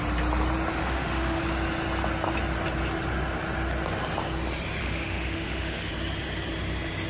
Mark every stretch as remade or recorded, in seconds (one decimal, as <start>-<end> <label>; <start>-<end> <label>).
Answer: 0.0-0.8 recorded; 0.8-1.4 remade; 1.4-4.8 recorded; 4.8-5.9 remade; 5.9-7.1 recorded